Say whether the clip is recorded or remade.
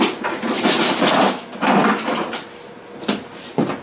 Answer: recorded